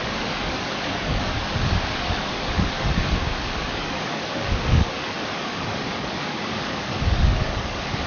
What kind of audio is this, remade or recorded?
remade